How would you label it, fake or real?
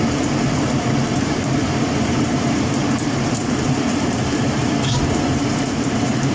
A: fake